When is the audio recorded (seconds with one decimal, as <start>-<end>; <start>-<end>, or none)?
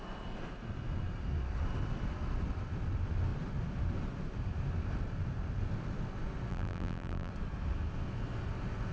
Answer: 0.0-6.5; 7.3-8.9